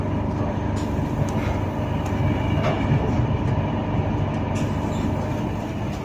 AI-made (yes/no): no